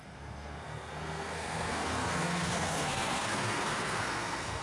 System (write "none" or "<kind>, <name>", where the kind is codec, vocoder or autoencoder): codec, SNAC